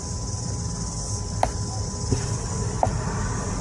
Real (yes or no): yes